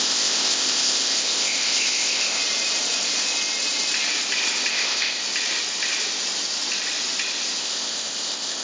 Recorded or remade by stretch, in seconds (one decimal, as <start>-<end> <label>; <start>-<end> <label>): 0.0-2.4 remade; 2.4-4.7 recorded; 4.7-5.2 remade; 5.2-7.6 recorded; 7.6-8.6 remade